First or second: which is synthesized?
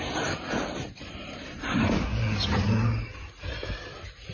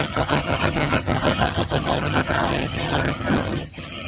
second